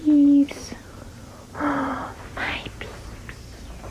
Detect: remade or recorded remade